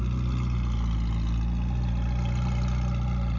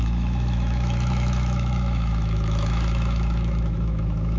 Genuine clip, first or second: first